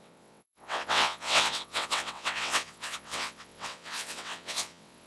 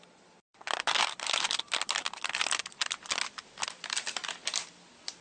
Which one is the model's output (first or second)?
first